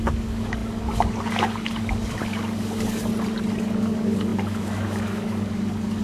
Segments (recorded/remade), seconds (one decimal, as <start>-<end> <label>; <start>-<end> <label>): 0.0-3.1 remade; 3.1-3.6 recorded; 3.6-6.0 remade